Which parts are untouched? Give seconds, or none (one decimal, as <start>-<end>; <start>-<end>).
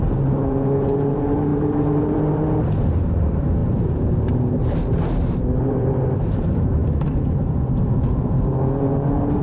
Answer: 6.8-7.8